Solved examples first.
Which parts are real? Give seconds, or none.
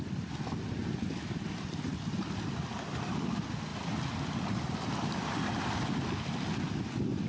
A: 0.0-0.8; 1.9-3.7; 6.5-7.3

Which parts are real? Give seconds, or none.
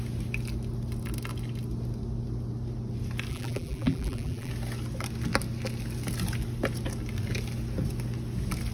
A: 0.0-3.3; 4.5-8.7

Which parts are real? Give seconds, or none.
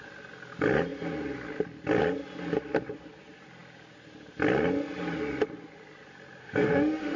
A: 0.0-6.4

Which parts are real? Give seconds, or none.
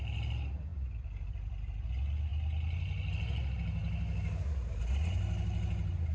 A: 0.0-6.1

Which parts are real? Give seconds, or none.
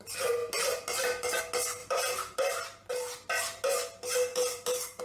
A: 0.0-1.8; 3.3-4.3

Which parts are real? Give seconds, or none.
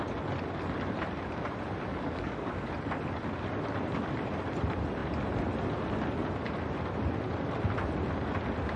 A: 0.0-1.9; 2.7-8.8